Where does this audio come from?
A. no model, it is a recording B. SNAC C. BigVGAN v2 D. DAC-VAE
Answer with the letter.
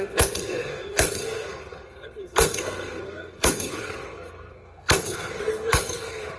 B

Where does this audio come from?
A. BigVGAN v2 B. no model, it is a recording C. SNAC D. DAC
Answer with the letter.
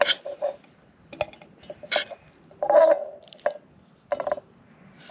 B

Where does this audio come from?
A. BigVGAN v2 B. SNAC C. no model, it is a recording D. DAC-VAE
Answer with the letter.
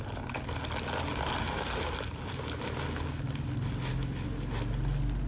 C